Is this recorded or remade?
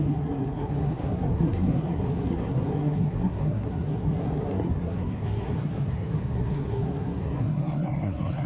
remade